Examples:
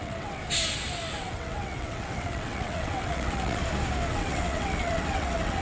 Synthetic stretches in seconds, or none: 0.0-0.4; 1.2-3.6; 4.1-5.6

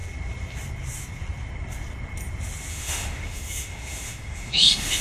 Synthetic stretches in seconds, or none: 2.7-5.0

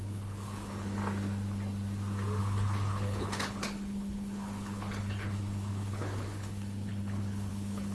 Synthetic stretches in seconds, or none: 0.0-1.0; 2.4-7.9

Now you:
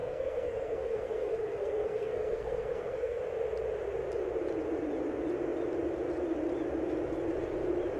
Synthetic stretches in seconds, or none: 0.0-3.2